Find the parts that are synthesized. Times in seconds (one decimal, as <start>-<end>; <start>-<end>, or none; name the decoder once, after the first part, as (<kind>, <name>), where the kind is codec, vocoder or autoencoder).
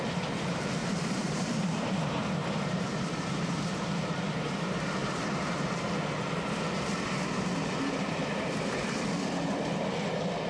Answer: 0.8-3.7 (vocoder, BigVGAN v2); 5.0-5.7